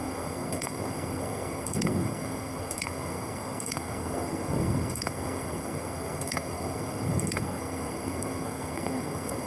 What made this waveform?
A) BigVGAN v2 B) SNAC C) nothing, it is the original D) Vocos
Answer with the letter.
B